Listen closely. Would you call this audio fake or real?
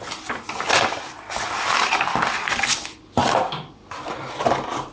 real